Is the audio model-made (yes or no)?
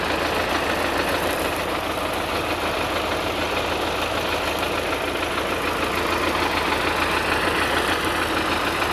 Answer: no